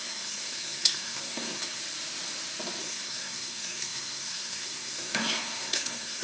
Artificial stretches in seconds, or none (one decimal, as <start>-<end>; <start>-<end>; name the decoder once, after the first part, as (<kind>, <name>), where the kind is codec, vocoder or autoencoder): 0.0-1.8 (codec, SNAC); 2.8-6.2